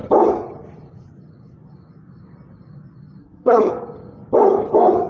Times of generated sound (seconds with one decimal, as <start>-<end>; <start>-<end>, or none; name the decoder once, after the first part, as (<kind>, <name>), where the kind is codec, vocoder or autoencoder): 3.2-3.7 (codec, SNAC)